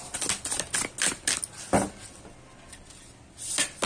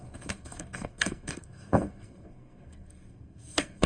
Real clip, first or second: first